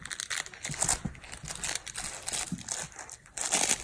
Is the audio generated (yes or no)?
no